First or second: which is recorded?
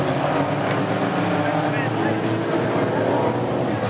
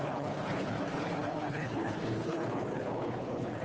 first